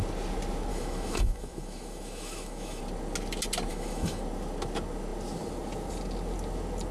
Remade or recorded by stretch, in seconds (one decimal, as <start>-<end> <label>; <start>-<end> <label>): 0.0-0.7 recorded; 0.7-2.8 remade; 2.8-3.7 recorded; 3.7-4.2 remade; 4.2-6.9 recorded